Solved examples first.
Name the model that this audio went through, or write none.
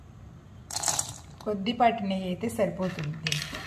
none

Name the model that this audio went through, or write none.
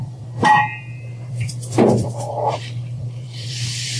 vocoder, BigVGAN v2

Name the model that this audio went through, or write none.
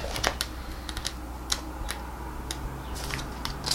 none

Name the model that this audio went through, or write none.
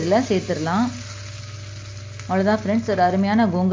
none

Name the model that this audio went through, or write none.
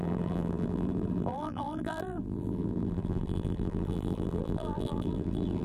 vocoder, BigVGAN v2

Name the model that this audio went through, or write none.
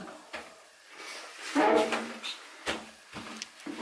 vocoder, BigVGAN v2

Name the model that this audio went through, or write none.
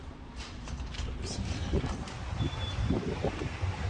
vocoder, BigVGAN v2